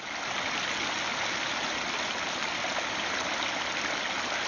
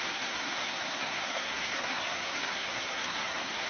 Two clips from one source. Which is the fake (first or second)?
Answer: second